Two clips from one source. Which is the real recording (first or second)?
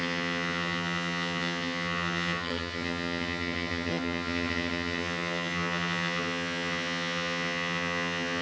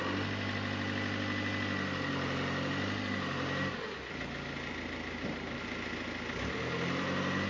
second